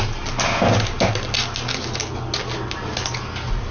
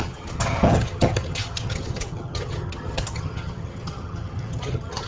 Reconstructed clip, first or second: second